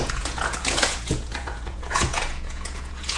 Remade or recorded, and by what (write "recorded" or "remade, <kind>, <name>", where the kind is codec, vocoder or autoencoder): remade, vocoder, Vocos